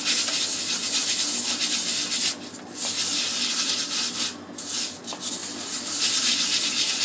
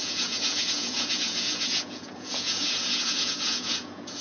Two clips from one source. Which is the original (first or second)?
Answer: first